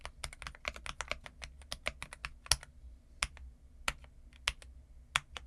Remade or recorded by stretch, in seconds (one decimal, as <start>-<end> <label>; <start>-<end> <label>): 0.0-5.5 recorded